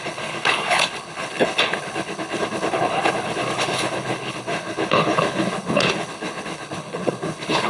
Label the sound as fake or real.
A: fake